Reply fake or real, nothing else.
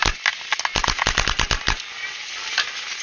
real